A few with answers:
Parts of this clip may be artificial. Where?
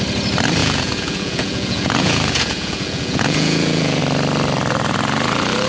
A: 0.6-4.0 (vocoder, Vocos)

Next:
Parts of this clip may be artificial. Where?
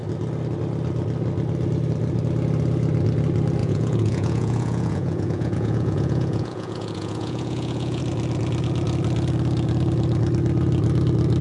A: 3.6-8.0 (vocoder, Vocos)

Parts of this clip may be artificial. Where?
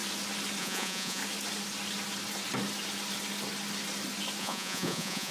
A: 0.6-1.2 (vocoder, Vocos); 4.4-5.3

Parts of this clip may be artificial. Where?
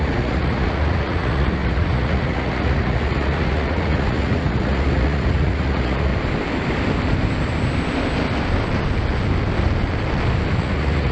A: 0.0-6.1 (vocoder, Vocos); 10.6-11.1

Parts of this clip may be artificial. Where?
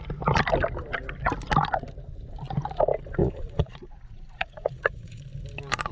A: 3.2-5.2 (vocoder, Vocos)